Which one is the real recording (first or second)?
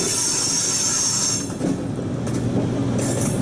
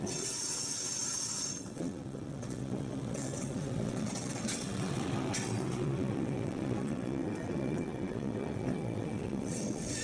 first